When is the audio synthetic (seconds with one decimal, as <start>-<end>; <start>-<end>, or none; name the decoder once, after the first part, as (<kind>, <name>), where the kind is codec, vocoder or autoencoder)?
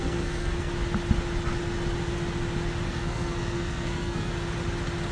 0.0-0.7 (codec, SNAC); 2.9-4.3